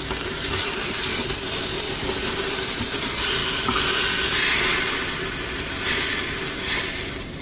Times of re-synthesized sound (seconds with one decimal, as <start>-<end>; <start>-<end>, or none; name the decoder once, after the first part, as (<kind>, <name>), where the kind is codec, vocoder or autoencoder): none